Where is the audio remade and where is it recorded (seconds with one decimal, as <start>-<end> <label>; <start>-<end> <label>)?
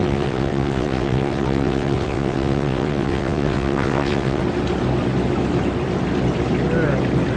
0.0-4.4 remade; 4.4-7.4 recorded